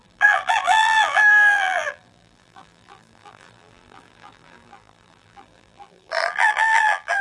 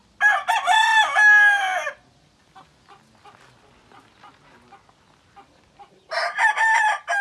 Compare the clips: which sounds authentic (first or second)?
second